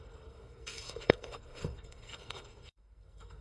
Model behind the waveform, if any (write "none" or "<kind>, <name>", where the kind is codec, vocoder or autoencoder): codec, SNAC